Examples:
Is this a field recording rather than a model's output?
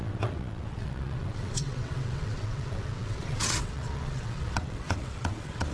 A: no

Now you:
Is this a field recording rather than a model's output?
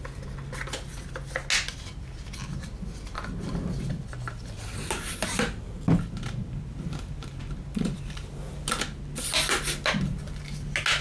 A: yes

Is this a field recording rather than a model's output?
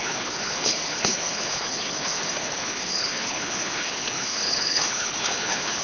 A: no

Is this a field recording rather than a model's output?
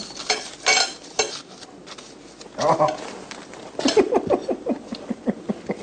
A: yes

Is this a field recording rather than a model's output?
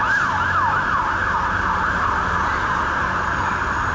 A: yes